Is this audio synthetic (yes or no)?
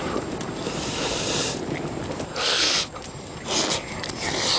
no